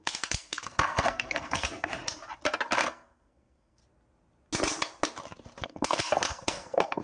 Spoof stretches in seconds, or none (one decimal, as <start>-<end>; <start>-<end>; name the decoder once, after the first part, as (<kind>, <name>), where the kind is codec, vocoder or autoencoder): 0.0-1.9 (codec, SNAC); 2.7-3.8; 5.6-7.0

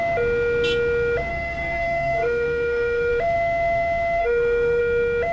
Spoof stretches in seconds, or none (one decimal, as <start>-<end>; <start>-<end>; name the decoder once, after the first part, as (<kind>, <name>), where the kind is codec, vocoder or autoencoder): 1.3-3.1 (codec, SNAC); 4.2-4.8